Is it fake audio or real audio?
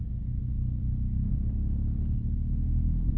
real